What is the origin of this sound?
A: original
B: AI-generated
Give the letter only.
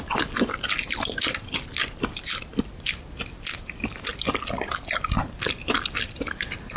A